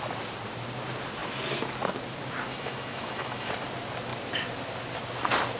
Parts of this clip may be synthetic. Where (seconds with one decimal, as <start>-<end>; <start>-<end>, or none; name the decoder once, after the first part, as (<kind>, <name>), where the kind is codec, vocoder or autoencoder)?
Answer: 2.5-3.5 (autoencoder, DAC-VAE)